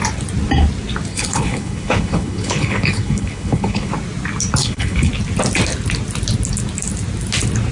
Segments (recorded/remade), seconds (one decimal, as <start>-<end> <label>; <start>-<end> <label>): 0.0-1.1 recorded; 1.1-3.9 remade; 3.9-4.6 recorded; 4.6-5.1 remade; 5.1-7.7 recorded